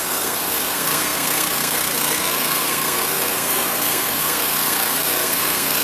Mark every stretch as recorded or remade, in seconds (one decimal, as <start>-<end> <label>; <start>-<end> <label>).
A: 0.0-5.8 remade